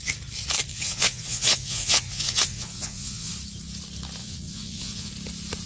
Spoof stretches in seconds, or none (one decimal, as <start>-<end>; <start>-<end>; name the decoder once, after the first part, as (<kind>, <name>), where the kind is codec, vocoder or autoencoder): 0.7-3.3 (vocoder, Vocos); 4.2-5.1